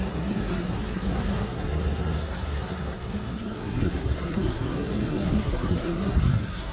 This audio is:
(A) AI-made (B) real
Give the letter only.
A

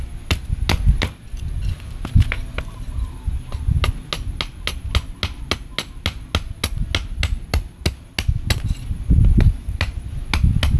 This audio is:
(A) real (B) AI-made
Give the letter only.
A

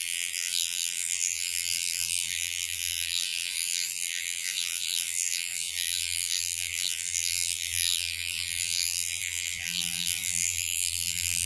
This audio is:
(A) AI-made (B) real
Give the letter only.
A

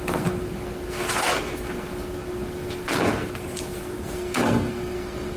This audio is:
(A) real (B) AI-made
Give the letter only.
B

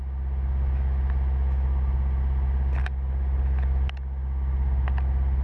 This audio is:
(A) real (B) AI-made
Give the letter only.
A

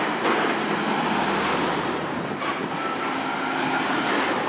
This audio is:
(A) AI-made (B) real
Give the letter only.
B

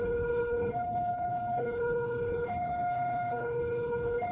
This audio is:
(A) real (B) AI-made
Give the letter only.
B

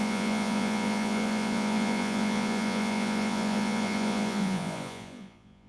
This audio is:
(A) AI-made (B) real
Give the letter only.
A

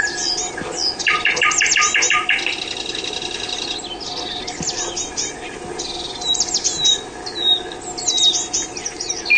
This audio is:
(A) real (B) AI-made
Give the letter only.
A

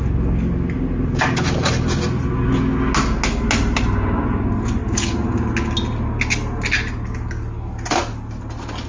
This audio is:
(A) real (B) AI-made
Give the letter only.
A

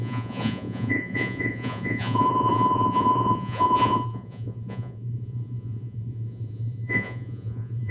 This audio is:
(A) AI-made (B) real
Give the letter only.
A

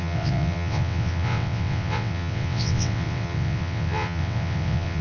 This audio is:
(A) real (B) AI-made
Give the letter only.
B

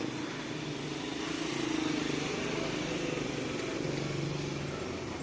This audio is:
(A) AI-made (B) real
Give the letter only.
B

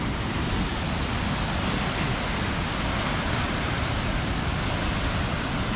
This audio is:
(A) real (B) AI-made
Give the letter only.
A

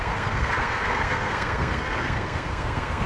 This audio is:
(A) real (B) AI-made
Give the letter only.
B